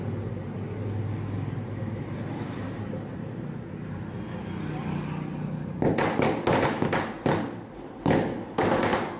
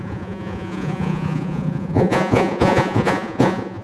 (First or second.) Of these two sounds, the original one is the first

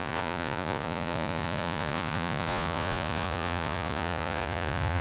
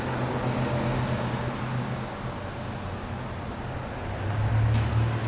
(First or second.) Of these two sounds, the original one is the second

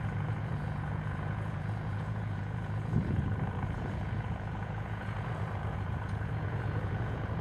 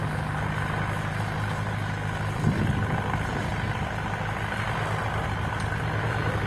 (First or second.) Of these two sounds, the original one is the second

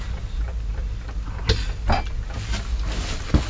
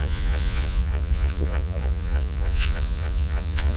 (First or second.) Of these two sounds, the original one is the first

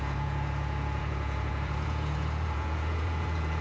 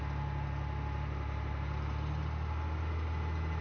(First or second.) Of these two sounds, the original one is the second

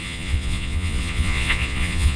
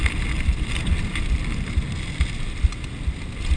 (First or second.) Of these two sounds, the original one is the second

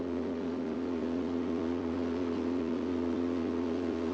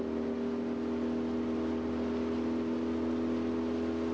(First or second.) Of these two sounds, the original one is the second